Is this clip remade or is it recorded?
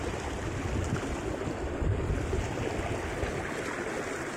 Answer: recorded